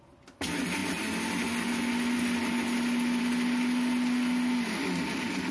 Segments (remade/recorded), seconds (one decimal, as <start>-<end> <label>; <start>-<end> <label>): 0.0-5.5 recorded